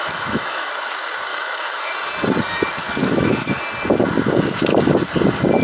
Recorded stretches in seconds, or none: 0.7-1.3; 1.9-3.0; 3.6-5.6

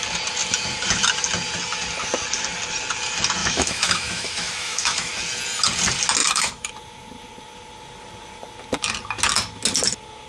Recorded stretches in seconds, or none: 0.0-3.4; 5.1-6.2; 6.7-10.3

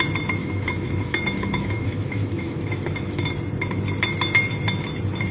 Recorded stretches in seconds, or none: 0.0-0.4; 3.3-5.3

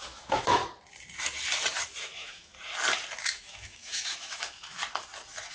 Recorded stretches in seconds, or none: 0.6-2.0; 2.5-3.2; 4.8-5.5